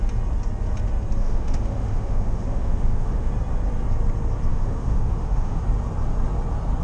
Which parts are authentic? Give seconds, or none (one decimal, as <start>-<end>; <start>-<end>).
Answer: 0.0-1.2; 3.3-4.5; 5.6-6.8